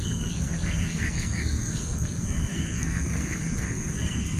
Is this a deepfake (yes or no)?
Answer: yes